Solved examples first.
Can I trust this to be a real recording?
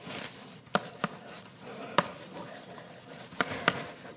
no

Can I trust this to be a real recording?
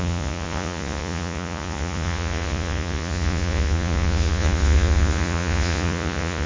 no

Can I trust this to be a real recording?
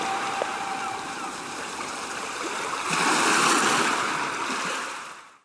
no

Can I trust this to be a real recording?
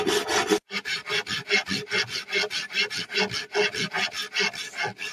yes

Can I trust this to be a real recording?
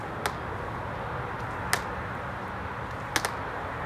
yes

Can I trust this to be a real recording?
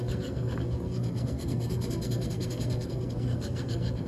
no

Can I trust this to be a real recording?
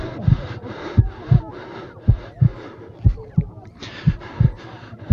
yes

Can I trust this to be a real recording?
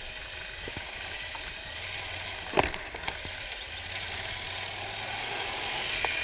yes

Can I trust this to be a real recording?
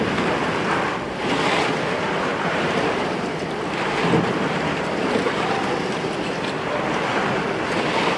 no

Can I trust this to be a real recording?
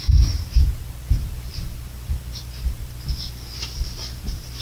no